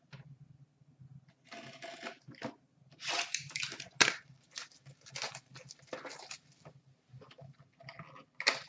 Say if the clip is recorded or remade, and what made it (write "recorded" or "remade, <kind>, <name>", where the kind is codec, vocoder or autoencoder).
recorded